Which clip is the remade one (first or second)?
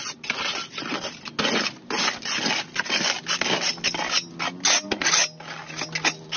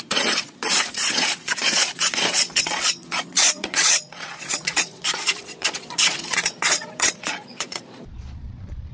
second